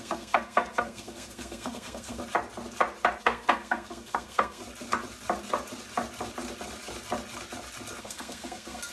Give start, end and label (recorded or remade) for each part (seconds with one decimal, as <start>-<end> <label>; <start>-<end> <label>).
0.0-2.2 remade; 2.2-3.2 recorded; 3.2-4.6 remade; 4.6-8.0 recorded; 8.0-8.9 remade